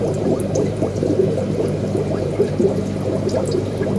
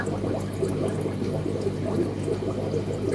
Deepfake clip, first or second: first